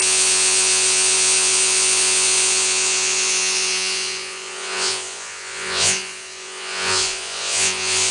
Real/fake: fake